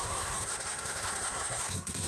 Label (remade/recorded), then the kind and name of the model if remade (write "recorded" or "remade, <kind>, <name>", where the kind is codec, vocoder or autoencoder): remade, codec, SNAC